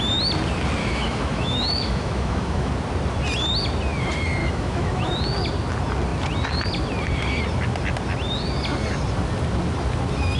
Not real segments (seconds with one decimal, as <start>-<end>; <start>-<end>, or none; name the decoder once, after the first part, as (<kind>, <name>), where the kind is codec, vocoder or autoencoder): 0.8-2.7 (autoencoder, DAC-VAE); 4.4-5.1